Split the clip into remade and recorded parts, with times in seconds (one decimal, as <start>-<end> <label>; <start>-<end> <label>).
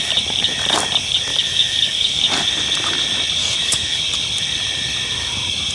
0.0-1.3 recorded; 1.3-2.2 remade; 2.2-3.4 recorded; 3.4-4.0 remade; 4.0-5.7 recorded